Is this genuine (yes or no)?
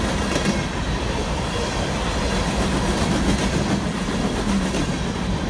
yes